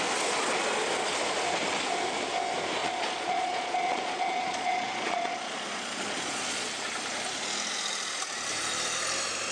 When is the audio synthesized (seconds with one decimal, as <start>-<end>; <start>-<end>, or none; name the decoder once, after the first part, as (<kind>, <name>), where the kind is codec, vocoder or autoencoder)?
2.8-6.7 (vocoder, Vocos)